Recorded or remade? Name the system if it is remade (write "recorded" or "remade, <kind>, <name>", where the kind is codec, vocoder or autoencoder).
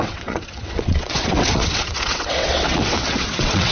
remade, vocoder, WaveNeXt